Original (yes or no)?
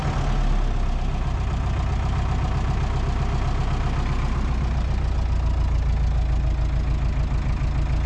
yes